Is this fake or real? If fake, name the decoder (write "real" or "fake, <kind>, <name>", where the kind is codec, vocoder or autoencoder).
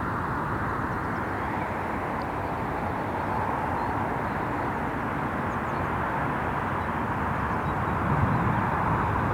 real